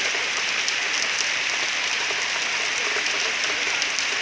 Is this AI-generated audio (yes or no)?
no